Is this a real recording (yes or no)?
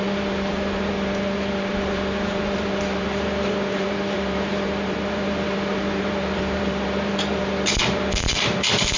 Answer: no